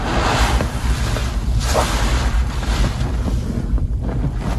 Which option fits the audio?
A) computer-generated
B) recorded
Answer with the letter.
A